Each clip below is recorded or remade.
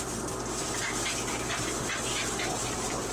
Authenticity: remade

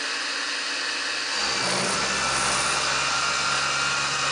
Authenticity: recorded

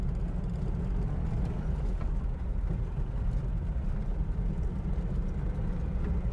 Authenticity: recorded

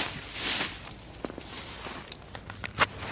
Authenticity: recorded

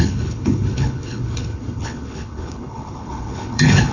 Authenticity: remade